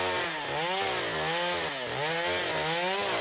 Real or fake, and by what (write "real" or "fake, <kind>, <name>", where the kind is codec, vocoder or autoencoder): real